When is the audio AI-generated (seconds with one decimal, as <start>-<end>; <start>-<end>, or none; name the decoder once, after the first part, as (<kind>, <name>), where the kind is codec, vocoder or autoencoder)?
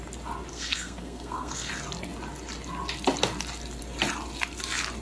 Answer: 0.5-1.7 (codec, SNAC)